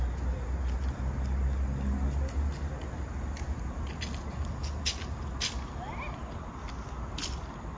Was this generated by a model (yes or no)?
no